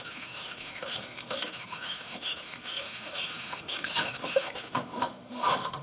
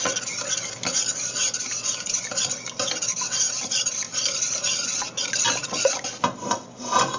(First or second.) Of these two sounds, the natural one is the second